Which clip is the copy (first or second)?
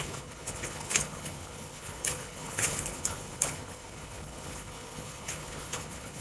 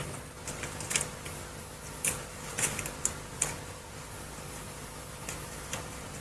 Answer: first